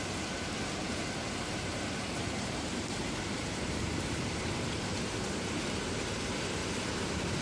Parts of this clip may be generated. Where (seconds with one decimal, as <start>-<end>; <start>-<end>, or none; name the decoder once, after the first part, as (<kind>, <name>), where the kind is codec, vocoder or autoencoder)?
0.8-5.2 (vocoder, BigVGAN v2); 6.6-7.4